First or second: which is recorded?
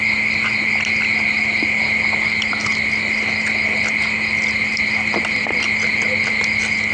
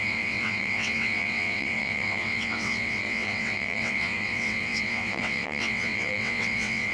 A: first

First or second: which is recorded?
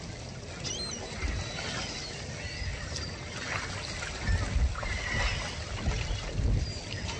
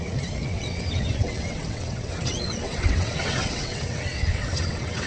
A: first